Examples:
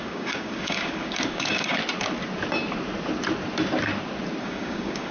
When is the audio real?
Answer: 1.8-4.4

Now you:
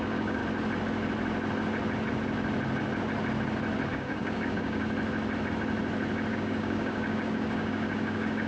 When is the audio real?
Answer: 0.4-3.9; 4.8-6.3

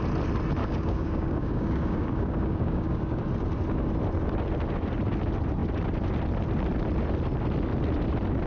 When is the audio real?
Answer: 0.0-0.6; 3.2-8.5

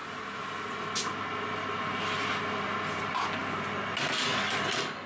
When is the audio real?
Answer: 0.0-5.1

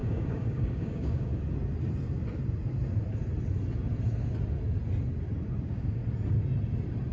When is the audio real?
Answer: 1.3-5.6; 6.0-7.1

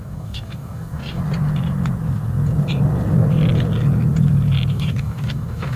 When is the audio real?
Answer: 1.2-4.7